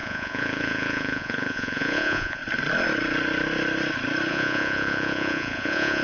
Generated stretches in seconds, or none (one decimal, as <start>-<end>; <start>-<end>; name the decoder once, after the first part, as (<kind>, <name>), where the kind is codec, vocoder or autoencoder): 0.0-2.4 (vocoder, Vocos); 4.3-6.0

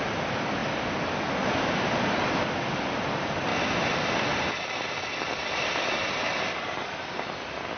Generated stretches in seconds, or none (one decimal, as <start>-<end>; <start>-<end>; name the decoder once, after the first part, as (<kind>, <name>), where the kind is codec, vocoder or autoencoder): 0.6-3.0 (vocoder, BigVGAN v2); 3.5-4.7; 6.0-6.8

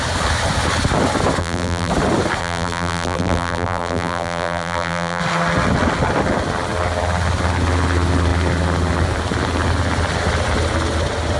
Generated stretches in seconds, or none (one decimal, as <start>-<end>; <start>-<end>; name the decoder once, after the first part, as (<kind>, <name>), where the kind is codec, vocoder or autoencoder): 1.4-1.9 (vocoder, BigVGAN v2); 2.4-5.2